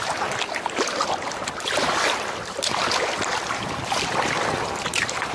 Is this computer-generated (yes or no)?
yes